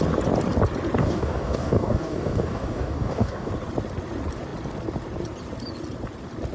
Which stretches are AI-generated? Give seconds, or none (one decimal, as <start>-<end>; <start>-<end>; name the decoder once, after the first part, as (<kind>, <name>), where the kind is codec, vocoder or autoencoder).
1.0-3.5 (codec, DAC)